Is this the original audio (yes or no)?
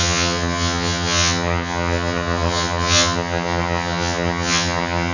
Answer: no